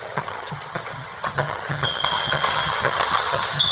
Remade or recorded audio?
remade